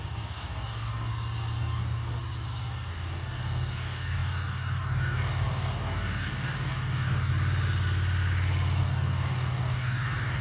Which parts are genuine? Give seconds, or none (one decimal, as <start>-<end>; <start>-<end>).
1.1-1.6; 2.2-2.9; 7.3-8.8